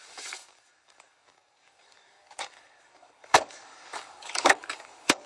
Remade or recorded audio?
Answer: remade